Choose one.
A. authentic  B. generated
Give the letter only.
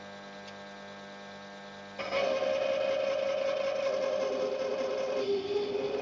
A